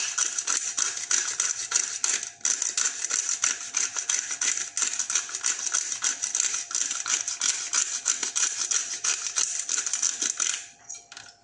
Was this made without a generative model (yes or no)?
yes